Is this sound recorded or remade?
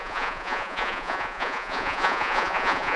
remade